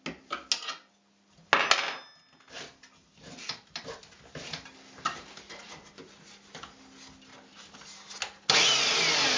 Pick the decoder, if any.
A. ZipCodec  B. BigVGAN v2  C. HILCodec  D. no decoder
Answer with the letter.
D